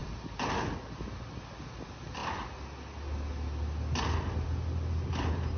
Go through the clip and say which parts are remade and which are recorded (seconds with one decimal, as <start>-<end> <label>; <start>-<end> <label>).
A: 0.0-5.6 recorded